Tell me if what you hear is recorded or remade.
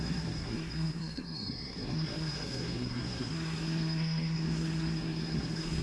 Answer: remade